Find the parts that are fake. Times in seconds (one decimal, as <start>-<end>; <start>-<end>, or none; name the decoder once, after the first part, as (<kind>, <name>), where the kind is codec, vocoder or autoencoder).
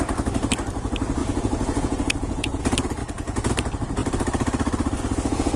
1.2-2.6 (vocoder, Vocos); 3.0-3.5